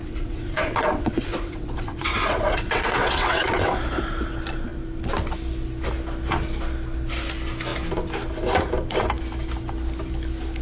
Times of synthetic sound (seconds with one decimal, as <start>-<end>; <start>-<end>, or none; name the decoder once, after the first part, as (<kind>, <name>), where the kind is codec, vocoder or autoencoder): 0.0-3.7 (vocoder, WaveNeXt)